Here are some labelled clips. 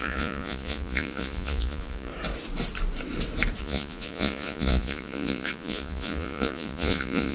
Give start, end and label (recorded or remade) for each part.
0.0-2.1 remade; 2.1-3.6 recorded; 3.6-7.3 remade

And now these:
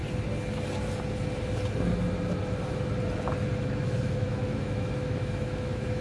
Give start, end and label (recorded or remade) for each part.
0.0-3.6 recorded; 3.6-6.0 remade

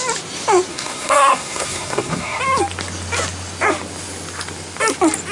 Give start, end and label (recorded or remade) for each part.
0.0-0.7 recorded; 0.7-2.4 remade; 2.4-5.3 recorded